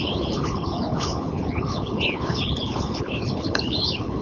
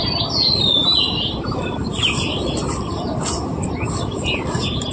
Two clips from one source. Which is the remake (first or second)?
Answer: first